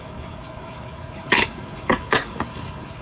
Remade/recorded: remade